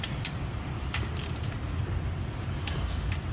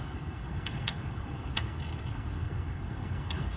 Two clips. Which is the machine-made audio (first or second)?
second